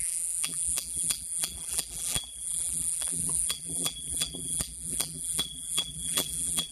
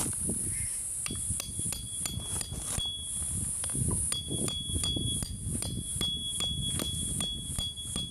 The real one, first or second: second